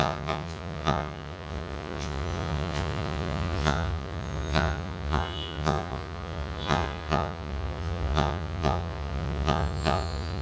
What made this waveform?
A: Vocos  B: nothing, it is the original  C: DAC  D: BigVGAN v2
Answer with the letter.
A